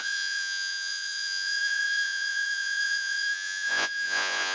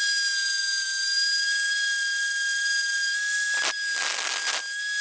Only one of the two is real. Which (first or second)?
second